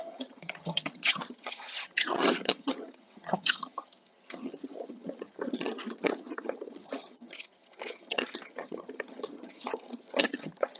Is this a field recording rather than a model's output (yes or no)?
no